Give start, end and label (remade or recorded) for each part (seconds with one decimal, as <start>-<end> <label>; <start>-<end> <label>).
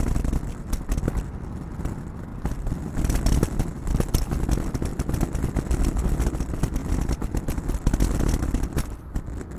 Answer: 0.0-9.6 recorded